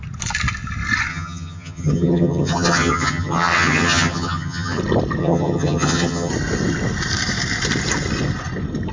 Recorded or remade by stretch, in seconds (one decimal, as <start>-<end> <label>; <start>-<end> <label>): 0.0-1.1 recorded; 1.1-4.8 remade; 4.8-5.2 recorded; 5.2-6.3 remade; 6.3-8.9 recorded

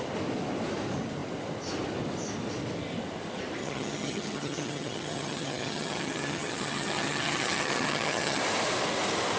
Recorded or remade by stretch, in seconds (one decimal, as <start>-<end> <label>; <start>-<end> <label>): 0.0-3.6 recorded; 3.6-8.4 remade; 8.4-9.4 recorded

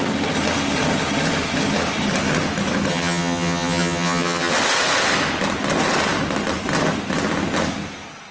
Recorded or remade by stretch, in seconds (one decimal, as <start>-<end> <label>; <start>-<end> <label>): 0.0-2.9 recorded; 2.9-4.5 remade; 4.5-8.3 recorded

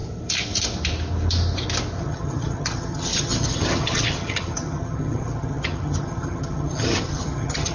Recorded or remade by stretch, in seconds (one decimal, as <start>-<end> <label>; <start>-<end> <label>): 0.0-2.0 recorded; 2.0-7.7 remade

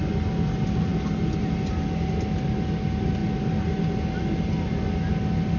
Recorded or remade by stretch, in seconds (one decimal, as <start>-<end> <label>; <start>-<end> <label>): 0.0-5.6 recorded